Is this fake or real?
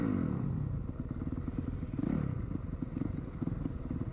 real